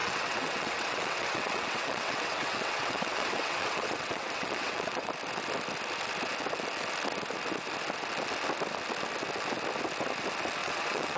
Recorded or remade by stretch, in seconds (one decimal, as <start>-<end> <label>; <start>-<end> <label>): 0.0-5.1 remade; 5.1-10.6 recorded; 10.6-11.2 remade